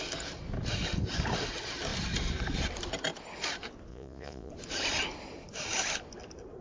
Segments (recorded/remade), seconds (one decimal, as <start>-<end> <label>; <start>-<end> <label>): 0.0-3.9 recorded; 3.9-4.5 remade; 4.5-6.6 recorded